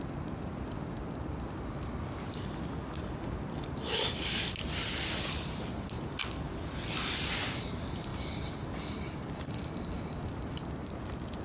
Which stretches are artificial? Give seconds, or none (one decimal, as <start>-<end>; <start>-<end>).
none

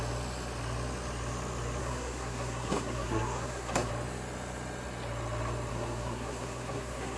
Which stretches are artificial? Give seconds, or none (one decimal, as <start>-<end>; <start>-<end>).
1.8-3.9; 5.7-7.2

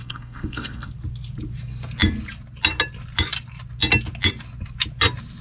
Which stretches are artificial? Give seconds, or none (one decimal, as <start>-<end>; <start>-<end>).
0.0-0.9

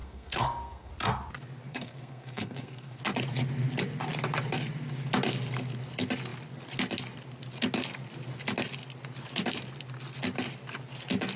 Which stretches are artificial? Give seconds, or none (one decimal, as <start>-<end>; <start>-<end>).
0.0-0.9; 1.7-3.0

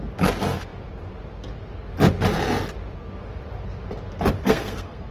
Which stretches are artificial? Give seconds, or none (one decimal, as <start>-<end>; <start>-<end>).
4.4-5.1